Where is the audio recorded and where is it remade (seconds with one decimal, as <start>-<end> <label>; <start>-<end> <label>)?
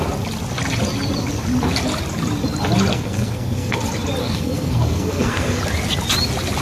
0.0-2.9 recorded; 2.9-3.8 remade; 3.8-4.2 recorded; 4.2-5.6 remade; 5.6-6.6 recorded